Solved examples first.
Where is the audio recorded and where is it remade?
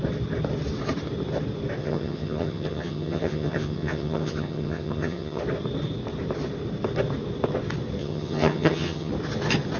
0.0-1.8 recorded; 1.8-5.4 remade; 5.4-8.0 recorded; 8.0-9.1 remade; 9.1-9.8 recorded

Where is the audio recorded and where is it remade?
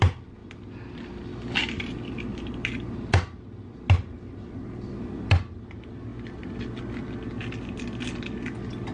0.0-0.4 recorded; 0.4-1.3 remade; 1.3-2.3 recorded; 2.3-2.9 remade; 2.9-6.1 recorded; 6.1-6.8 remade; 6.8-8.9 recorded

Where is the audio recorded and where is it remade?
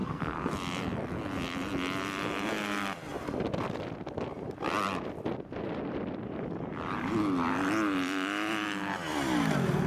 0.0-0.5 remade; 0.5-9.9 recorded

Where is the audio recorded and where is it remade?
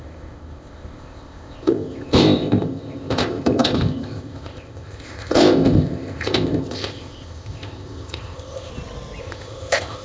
0.0-8.7 remade; 8.7-9.2 recorded; 9.2-10.0 remade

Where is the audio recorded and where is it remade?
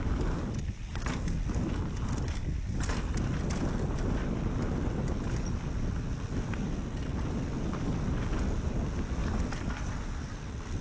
0.0-10.8 recorded